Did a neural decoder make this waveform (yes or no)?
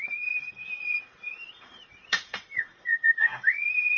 yes